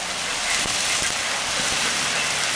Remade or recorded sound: recorded